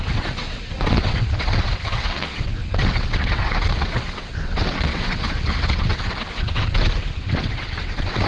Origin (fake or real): fake